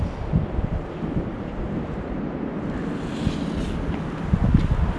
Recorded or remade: recorded